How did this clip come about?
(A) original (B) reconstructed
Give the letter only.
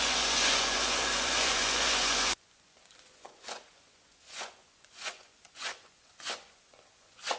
B